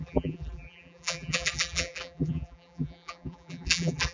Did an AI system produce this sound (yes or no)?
yes